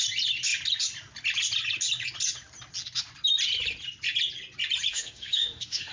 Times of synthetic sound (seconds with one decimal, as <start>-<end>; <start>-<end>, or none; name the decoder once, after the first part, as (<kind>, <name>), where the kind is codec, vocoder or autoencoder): 4.9-5.9 (autoencoder, DAC-VAE)